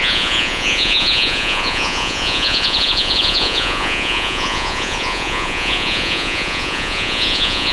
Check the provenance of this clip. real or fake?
fake